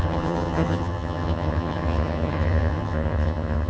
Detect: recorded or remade remade